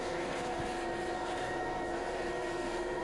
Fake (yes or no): yes